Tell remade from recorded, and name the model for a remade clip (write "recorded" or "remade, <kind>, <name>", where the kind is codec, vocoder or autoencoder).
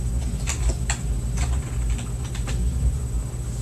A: recorded